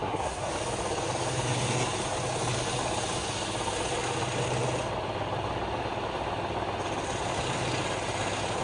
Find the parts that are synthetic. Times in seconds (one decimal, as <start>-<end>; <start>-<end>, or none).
0.0-0.5